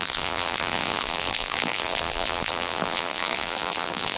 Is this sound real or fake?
fake